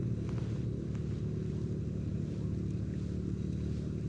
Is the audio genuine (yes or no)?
yes